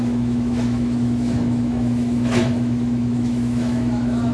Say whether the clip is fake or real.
fake